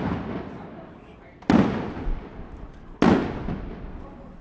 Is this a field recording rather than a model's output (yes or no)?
yes